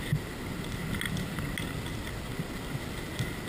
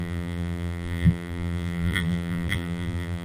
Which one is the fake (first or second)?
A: second